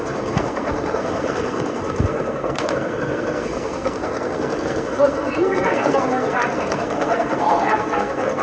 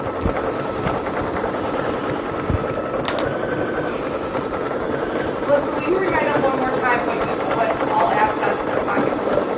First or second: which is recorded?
second